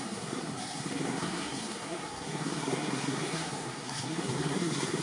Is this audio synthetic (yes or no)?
yes